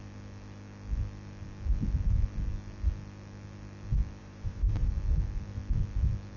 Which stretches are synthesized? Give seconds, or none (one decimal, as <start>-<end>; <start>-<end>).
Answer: 4.2-4.9